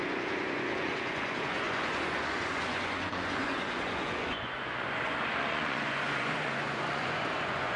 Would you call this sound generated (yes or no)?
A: yes